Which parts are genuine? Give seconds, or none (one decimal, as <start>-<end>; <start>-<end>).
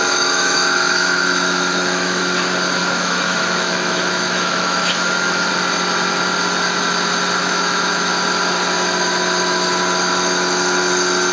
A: 2.2-2.8; 5.5-7.4; 8.1-11.3